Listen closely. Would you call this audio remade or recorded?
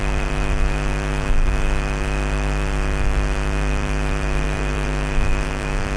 remade